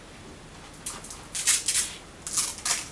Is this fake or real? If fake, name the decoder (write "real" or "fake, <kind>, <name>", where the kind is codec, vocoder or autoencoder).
real